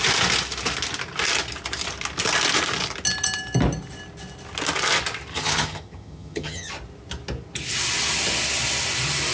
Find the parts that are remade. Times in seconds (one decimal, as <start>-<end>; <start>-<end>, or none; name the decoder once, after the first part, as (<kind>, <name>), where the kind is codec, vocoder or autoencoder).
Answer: 5.3-6.7 (vocoder, HiFi-GAN)